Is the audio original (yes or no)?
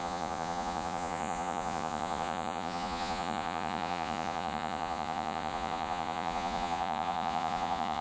no